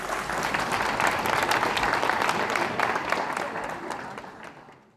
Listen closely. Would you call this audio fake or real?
real